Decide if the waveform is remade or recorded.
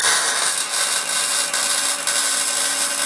recorded